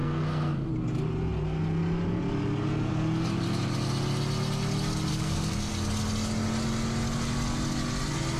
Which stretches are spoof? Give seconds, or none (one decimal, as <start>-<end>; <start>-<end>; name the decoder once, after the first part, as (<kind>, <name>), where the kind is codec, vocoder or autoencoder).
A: 0.0-0.7 (codec, SNAC); 5.1-5.7